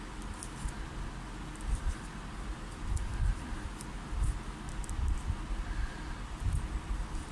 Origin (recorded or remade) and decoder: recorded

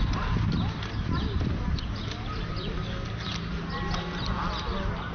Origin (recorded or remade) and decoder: recorded